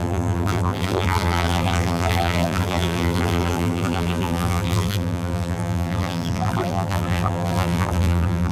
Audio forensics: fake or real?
fake